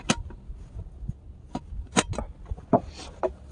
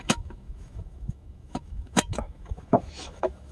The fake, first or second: second